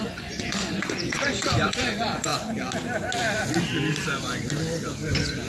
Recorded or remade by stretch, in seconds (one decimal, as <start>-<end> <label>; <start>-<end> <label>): 0.0-2.3 remade; 2.3-5.5 recorded

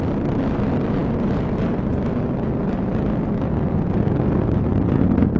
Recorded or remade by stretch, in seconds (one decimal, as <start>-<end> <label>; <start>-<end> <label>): 0.0-5.4 recorded

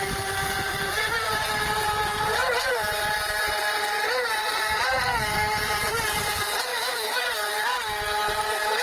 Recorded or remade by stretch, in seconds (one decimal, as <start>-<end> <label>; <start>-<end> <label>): 0.0-6.7 recorded; 6.7-7.2 remade; 7.2-8.8 recorded

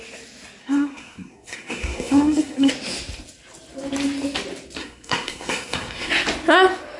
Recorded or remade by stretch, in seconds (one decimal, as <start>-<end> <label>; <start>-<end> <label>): 0.0-0.6 recorded; 0.6-2.7 remade; 2.7-4.8 recorded; 4.8-6.1 remade; 6.1-7.0 recorded

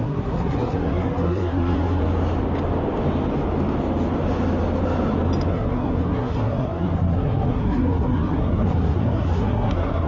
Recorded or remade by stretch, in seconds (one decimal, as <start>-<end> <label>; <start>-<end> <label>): 0.0-2.0 remade; 2.0-5.5 recorded; 5.5-10.1 remade

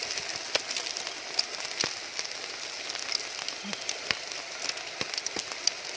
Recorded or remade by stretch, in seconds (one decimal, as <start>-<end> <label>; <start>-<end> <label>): 0.0-6.0 recorded

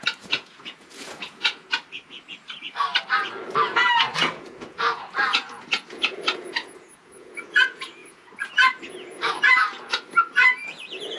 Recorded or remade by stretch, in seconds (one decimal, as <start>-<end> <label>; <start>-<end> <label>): 0.0-1.7 remade; 1.7-4.2 recorded; 4.2-11.2 remade

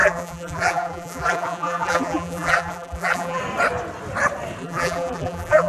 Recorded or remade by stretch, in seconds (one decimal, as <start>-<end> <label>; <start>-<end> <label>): 0.0-3.4 remade; 3.4-4.6 recorded; 4.6-5.7 remade